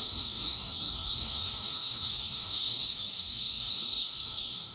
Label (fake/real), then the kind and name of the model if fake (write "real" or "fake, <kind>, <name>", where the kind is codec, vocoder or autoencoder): fake, codec, DAC